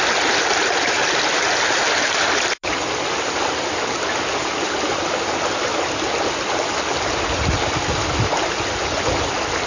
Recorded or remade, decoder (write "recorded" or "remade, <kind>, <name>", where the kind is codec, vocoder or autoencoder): recorded